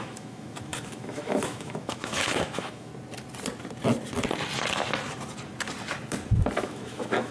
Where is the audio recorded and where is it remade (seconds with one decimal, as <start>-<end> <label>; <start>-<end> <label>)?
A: 0.0-2.9 remade; 2.9-6.6 recorded; 6.6-7.3 remade